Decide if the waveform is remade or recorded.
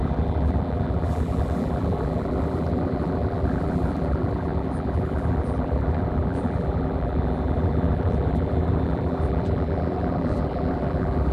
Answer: remade